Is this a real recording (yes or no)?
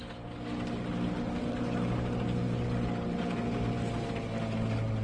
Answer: yes